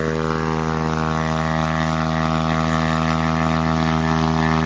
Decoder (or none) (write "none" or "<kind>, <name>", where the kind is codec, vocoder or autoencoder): none